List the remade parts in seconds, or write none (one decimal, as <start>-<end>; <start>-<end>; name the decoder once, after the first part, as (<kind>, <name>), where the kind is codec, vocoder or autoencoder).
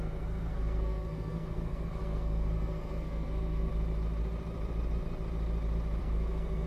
0.0-3.7 (codec, SNAC); 6.0-6.7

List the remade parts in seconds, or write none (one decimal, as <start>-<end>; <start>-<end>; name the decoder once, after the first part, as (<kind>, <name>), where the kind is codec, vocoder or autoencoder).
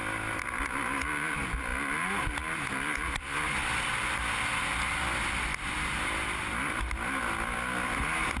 none